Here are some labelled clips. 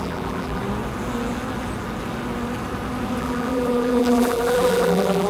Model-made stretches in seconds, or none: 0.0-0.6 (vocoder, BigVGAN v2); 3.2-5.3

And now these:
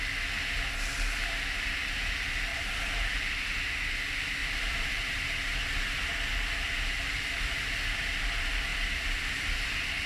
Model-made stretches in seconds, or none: 2.5-3.4 (vocoder, BigVGAN v2); 4.4-5.0; 8.7-10.1

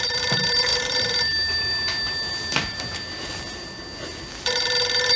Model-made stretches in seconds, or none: 0.7-3.8 (vocoder, BigVGAN v2)

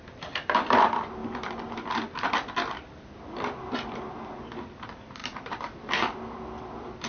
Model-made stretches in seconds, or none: 5.2-5.9 (vocoder, BigVGAN v2)

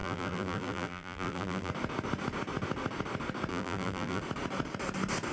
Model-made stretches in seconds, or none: 0.0-1.7 (vocoder, BigVGAN v2); 3.5-4.2

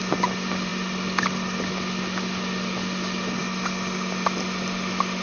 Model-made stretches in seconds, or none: none

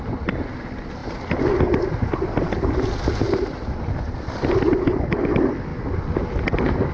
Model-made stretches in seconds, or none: 1.0-4.9 (vocoder, BigVGAN v2)